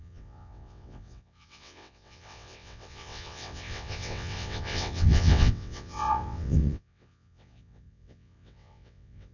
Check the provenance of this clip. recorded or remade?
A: remade